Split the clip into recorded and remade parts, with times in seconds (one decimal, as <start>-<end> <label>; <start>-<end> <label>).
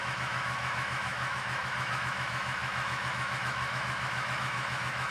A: 0.0-5.1 remade